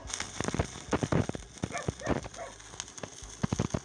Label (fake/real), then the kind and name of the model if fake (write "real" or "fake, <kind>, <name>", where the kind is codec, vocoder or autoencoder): real